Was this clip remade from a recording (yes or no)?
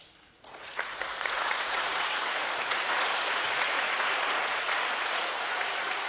yes